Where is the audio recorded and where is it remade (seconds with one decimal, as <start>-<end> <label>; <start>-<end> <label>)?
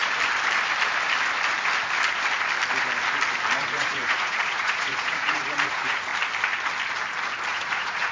0.0-3.6 recorded; 3.6-6.1 remade; 6.1-7.5 recorded; 7.5-8.1 remade